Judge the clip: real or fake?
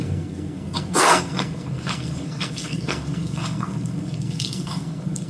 fake